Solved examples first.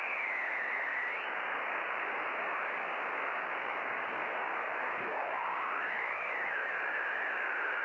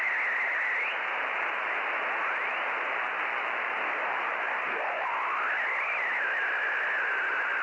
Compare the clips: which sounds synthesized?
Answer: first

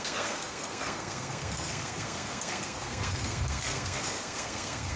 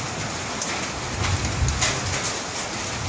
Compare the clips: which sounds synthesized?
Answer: first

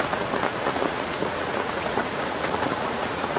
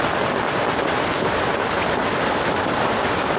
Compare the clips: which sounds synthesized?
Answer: first